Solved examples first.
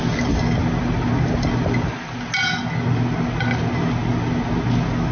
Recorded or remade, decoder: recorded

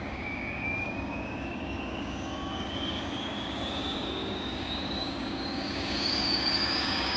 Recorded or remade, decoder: remade, codec, DAC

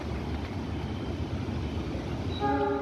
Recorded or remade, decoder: recorded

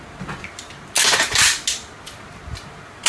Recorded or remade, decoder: recorded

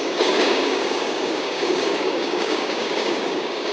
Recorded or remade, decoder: remade, codec, DAC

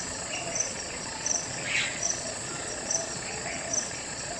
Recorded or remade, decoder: remade, vocoder, Vocos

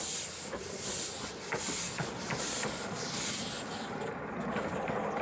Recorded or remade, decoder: recorded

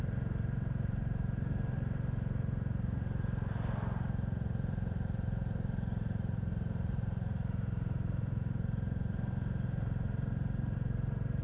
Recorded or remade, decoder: remade, vocoder, BigVGAN v2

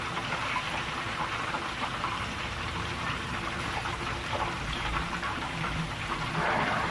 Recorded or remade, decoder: remade, vocoder, BigVGAN v2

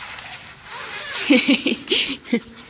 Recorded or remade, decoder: recorded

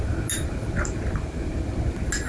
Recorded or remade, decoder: recorded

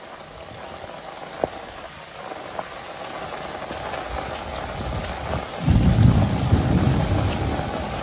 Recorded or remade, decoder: recorded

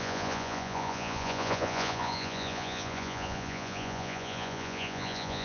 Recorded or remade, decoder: remade, vocoder, Vocos